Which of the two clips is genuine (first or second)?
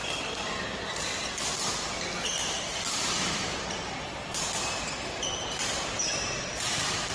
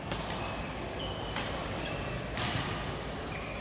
second